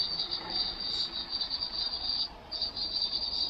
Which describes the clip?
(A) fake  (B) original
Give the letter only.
B